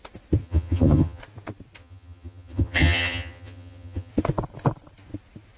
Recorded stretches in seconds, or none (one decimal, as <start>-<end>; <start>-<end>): 0.0-0.4; 1.2-1.8; 4.1-5.6